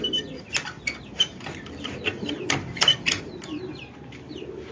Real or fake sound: real